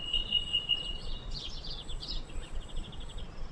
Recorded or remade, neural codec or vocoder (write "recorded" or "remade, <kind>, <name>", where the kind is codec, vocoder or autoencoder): remade, vocoder, Vocos